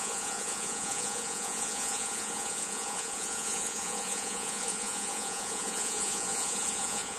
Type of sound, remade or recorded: remade